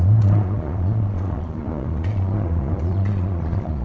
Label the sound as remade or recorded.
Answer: remade